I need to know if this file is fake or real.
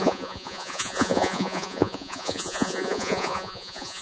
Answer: fake